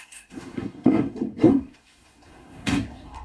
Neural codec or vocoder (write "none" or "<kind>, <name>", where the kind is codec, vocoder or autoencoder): codec, SNAC